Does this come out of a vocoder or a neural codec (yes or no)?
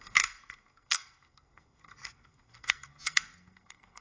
yes